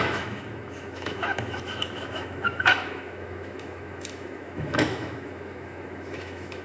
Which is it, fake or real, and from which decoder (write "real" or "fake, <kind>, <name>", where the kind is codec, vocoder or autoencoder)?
fake, autoencoder, DAC-VAE